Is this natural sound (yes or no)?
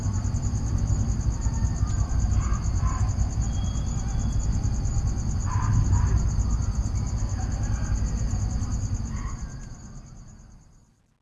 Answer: yes